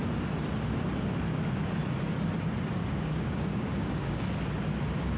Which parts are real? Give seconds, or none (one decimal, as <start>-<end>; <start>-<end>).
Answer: 0.0-2.8; 4.2-5.2